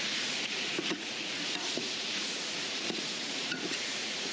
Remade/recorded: remade